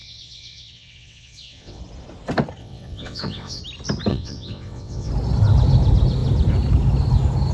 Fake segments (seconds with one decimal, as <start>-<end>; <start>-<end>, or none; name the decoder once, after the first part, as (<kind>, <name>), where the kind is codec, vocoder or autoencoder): 0.0-1.8 (vocoder, WaveNeXt); 2.6-3.6; 4.1-5.1